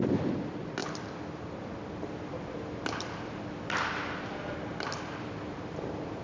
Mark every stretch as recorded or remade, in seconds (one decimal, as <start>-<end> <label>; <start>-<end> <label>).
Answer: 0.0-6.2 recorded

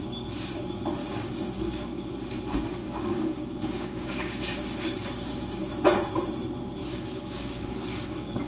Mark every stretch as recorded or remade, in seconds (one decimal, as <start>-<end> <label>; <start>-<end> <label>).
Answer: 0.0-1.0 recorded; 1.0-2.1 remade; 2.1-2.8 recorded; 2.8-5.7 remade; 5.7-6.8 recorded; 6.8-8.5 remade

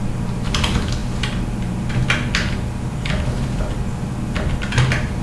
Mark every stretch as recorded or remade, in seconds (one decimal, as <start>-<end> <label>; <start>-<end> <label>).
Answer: 0.0-5.2 recorded

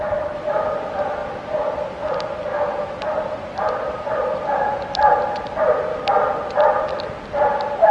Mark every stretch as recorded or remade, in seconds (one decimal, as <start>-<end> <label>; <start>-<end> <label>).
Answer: 0.0-7.9 recorded

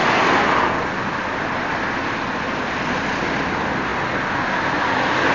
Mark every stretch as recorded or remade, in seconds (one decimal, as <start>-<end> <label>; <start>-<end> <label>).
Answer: 0.0-5.3 recorded